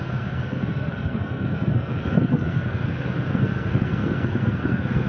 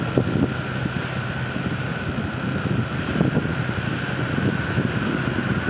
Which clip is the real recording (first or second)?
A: second